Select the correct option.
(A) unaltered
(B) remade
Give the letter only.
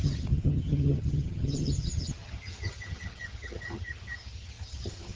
B